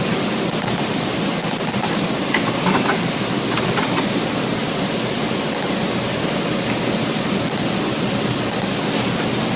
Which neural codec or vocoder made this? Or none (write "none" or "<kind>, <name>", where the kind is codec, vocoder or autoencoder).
none